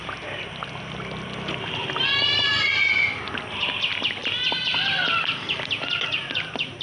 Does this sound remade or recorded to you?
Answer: recorded